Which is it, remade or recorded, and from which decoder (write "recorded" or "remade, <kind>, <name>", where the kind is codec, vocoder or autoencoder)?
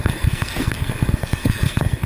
remade, codec, SNAC